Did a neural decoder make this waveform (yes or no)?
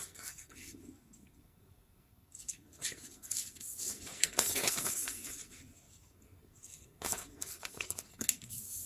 yes